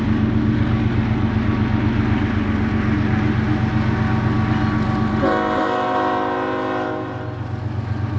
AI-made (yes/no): no